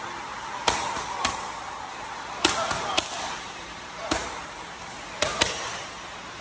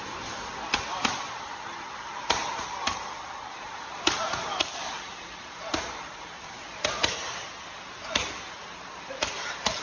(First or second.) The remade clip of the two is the second